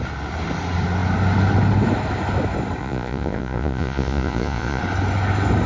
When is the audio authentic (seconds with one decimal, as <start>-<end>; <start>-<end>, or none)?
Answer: 0.0-2.8; 4.8-5.7